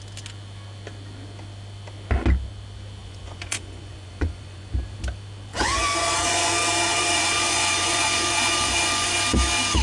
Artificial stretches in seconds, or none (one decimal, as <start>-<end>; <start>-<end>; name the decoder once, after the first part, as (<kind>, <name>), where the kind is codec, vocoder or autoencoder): 3.0-4.7 (vocoder, Vocos); 5.5-6.5; 6.9-9.2